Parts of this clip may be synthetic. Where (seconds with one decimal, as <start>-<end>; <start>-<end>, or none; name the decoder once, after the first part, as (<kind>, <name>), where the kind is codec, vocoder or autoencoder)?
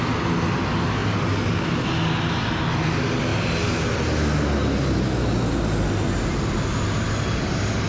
none